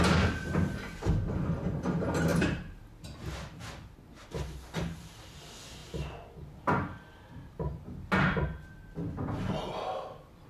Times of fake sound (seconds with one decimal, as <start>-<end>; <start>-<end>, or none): 2.3-2.8